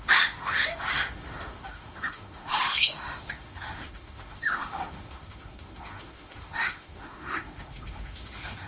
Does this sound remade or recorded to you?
remade